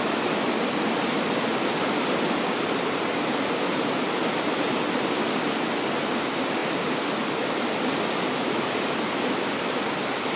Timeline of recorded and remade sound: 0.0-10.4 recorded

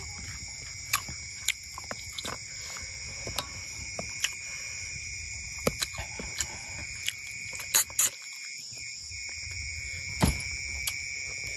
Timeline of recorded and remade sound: 0.0-11.6 recorded

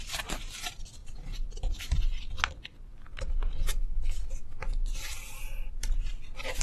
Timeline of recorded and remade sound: 0.0-1.0 recorded; 1.0-2.2 remade; 2.2-2.9 recorded; 2.9-4.4 remade; 4.4-6.6 recorded

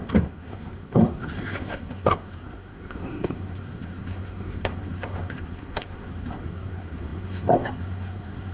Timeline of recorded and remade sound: 0.0-8.5 remade